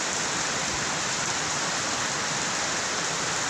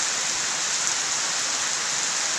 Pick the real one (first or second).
second